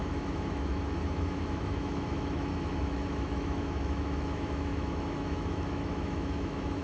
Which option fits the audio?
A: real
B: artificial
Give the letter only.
B